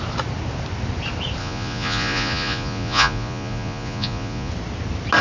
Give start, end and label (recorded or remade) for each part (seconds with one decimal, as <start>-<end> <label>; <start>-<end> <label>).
0.0-1.4 recorded; 1.4-4.5 remade; 4.5-5.2 recorded